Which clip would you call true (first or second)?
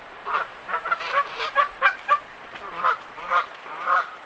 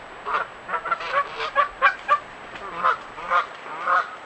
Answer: second